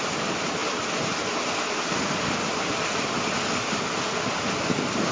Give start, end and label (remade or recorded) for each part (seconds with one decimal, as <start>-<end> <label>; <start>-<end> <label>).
0.0-5.1 recorded